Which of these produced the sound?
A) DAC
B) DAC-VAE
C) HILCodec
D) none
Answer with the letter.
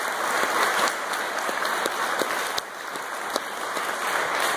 D